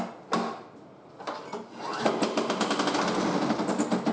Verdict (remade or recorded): recorded